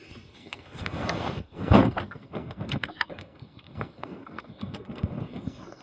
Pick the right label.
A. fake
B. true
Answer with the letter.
A